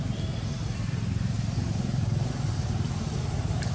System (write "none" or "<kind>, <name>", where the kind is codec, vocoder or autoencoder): none